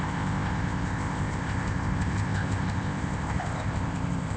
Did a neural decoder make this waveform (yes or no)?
yes